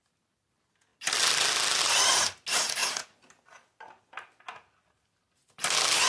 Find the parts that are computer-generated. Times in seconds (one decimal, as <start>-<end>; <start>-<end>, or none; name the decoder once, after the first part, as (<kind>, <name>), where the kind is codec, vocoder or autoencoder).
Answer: 0.9-1.8 (vocoder, BigVGAN v2)

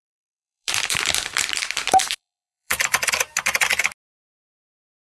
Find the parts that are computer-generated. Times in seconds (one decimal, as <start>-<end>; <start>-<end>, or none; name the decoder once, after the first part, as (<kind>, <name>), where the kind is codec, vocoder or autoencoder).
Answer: 0.0-3.1 (vocoder, BigVGAN v2)